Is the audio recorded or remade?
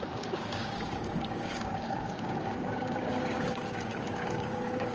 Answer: remade